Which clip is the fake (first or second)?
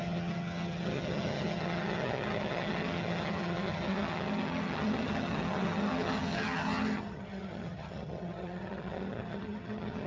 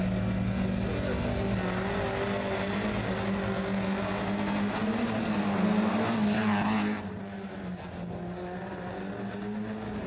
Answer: first